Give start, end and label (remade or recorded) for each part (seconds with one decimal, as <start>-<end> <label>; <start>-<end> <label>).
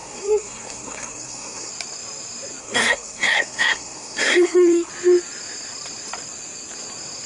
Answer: 0.0-1.7 remade; 1.7-2.6 recorded; 2.6-4.9 remade; 4.9-7.3 recorded